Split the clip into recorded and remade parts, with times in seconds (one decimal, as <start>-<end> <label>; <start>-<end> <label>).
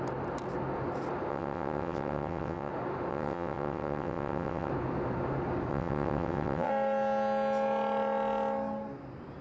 0.0-1.3 recorded; 1.3-2.7 remade; 2.7-3.1 recorded; 3.1-4.7 remade; 4.7-5.7 recorded; 5.7-6.7 remade; 6.7-9.4 recorded